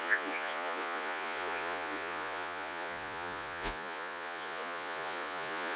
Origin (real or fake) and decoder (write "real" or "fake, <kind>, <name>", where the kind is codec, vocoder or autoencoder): fake, vocoder, Vocos